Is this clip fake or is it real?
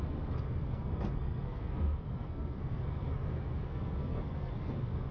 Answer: fake